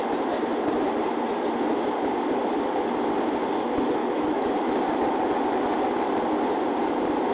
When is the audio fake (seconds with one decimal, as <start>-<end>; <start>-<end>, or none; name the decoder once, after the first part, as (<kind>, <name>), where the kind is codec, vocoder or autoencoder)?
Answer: 4.0-4.8 (autoencoder, DAC-VAE)

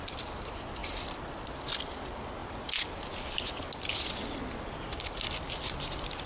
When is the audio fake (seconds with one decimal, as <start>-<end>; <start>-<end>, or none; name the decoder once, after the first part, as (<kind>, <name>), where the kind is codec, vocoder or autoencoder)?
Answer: 0.8-1.6 (vocoder, BigVGAN v2)